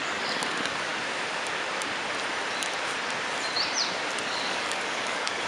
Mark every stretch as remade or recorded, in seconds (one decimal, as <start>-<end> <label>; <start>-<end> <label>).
0.0-0.9 remade; 0.9-4.2 recorded; 4.2-5.5 remade